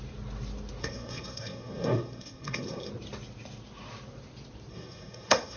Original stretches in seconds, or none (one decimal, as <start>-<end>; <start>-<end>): 0.0-0.8; 2.9-4.7